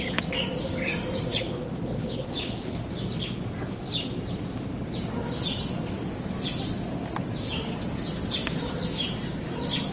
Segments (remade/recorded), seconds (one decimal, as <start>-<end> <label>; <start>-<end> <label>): 0.0-1.3 recorded; 1.3-2.8 remade; 2.8-9.9 recorded